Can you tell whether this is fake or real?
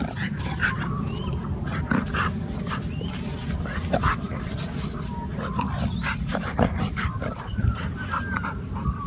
fake